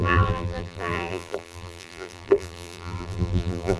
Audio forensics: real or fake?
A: fake